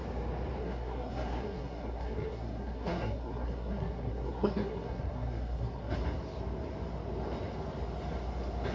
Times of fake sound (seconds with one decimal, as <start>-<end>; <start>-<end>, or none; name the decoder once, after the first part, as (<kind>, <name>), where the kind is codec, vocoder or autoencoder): 0.6-6.0 (codec, SNAC)